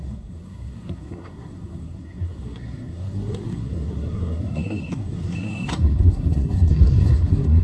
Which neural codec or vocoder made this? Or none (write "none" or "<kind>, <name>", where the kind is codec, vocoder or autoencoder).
codec, SNAC